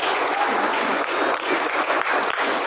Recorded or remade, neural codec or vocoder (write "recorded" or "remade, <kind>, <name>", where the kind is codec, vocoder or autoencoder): remade, vocoder, Vocos